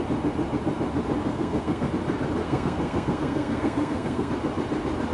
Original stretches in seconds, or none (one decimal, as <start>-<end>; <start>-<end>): 0.0-1.2; 1.9-2.4; 4.3-5.1